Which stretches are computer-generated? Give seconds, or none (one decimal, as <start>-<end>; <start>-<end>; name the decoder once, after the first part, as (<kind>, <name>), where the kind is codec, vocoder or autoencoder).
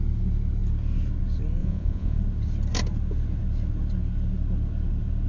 1.6-2.2 (vocoder, Vocos)